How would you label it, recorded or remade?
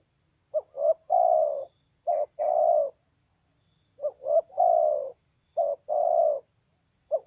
recorded